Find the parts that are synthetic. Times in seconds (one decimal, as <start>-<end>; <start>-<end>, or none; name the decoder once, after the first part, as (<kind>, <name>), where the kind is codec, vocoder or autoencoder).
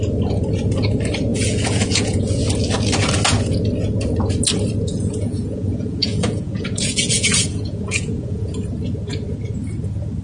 1.3-2.2 (vocoder, Vocos); 4.9-8.7